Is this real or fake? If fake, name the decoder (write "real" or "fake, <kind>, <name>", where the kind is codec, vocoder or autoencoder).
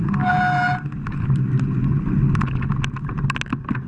real